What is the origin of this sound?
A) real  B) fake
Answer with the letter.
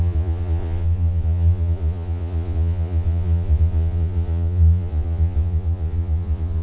B